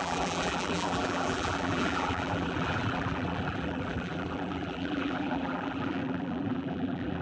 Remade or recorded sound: remade